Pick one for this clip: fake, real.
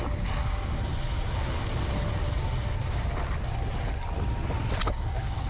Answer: real